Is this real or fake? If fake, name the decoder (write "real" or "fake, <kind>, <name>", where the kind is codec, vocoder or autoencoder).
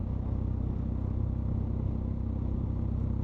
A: real